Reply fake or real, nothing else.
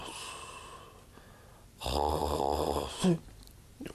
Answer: real